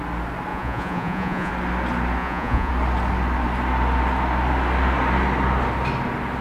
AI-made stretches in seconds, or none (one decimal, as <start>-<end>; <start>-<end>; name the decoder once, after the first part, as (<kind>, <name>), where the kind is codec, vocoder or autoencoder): 0.5-1.5 (vocoder, Vocos); 2.2-2.7